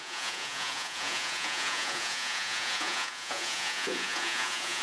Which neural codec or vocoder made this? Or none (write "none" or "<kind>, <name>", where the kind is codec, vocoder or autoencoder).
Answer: vocoder, Vocos